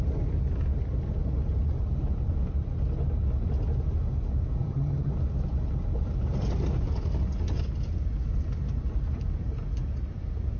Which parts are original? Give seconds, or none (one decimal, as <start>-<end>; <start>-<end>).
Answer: 0.0-4.6; 5.1-10.6